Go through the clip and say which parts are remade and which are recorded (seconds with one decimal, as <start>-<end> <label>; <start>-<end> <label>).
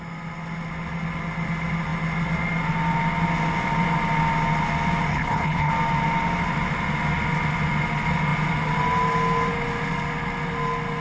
0.0-5.1 recorded; 5.1-5.7 remade; 5.7-11.0 recorded